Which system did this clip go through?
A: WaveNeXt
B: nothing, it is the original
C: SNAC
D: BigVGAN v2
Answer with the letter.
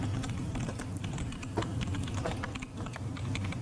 D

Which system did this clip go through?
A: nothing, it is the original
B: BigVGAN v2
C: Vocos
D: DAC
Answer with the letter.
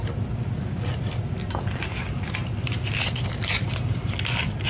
A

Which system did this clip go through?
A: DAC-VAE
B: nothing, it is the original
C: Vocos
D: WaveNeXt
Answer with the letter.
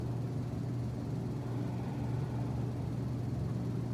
B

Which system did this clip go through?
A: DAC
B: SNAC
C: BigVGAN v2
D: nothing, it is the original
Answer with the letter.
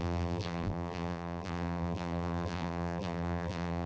C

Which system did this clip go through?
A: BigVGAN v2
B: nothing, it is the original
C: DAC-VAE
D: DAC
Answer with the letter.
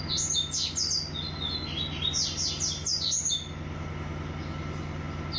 B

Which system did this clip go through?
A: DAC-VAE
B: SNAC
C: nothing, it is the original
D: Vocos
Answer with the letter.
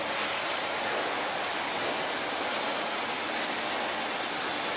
C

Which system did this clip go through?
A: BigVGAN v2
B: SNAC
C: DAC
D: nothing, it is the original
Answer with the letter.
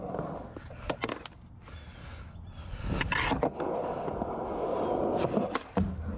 D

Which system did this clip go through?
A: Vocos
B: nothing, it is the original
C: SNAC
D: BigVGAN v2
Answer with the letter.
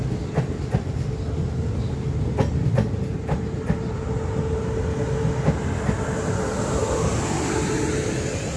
B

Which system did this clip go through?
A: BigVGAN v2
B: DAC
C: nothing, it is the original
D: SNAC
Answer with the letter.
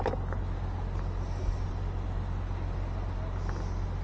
C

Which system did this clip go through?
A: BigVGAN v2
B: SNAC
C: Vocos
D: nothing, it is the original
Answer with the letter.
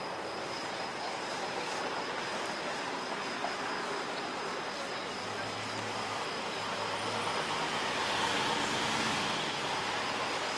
D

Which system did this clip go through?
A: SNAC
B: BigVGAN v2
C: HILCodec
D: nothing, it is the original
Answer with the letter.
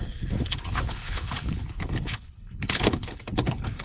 C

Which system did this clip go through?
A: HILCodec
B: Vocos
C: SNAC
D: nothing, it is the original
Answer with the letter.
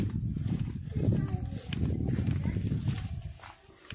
D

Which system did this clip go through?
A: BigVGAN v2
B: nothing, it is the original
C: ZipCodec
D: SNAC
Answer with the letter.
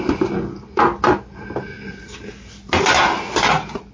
B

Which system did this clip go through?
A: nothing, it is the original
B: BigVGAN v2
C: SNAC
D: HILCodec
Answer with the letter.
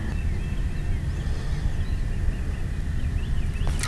A